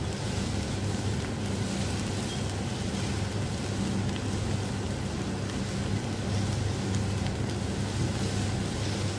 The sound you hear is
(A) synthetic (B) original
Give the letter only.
B